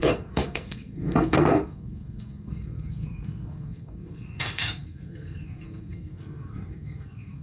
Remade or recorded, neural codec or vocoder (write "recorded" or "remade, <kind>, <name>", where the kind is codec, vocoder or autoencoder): remade, codec, SNAC